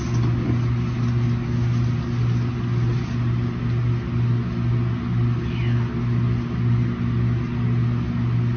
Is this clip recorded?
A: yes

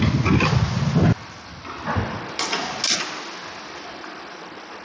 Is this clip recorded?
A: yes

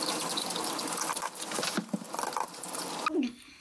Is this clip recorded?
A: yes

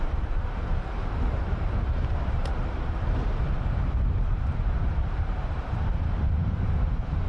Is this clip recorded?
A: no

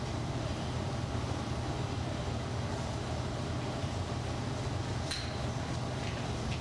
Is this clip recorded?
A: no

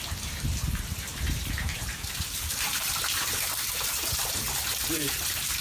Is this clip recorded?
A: no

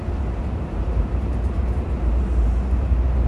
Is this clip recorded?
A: no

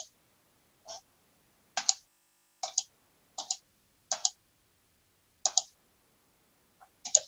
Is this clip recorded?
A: yes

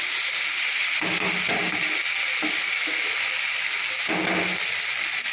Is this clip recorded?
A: yes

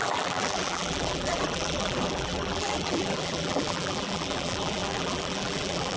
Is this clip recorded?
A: no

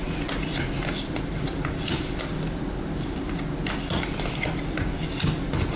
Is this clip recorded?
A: yes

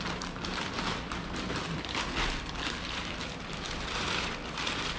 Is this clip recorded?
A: no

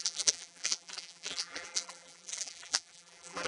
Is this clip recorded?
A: no